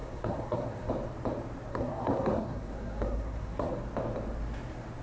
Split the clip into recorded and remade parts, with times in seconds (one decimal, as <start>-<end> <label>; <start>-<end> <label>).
0.0-0.9 remade; 0.9-1.7 recorded; 1.7-3.7 remade; 3.7-5.0 recorded